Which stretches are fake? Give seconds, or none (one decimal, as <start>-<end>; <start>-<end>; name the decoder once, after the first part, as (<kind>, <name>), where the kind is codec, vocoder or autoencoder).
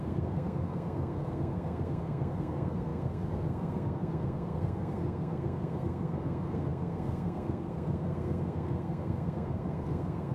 0.0-10.3 (codec, SNAC)